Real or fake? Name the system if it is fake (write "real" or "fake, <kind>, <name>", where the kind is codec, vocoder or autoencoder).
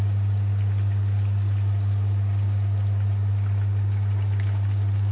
real